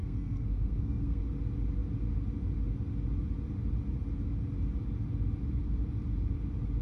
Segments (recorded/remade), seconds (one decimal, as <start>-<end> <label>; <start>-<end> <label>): 0.0-1.2 remade; 1.2-6.8 recorded